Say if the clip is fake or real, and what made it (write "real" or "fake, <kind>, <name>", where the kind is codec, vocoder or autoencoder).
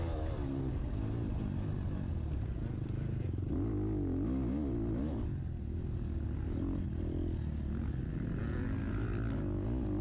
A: real